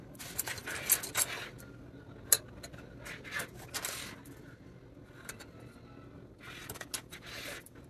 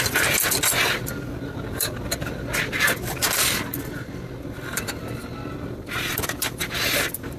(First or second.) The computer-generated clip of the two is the second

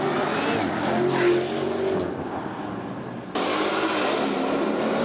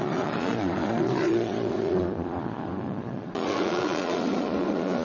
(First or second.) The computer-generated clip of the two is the second